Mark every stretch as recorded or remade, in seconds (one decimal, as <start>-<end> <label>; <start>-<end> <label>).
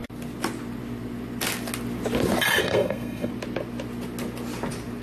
0.0-2.6 recorded; 2.6-3.3 remade; 3.3-5.0 recorded